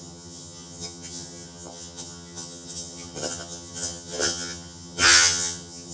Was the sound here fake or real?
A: fake